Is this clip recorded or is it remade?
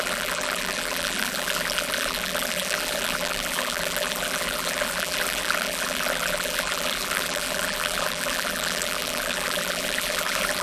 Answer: remade